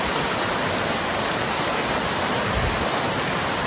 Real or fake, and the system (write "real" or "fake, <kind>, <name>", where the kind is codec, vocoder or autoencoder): fake, vocoder, BigVGAN v2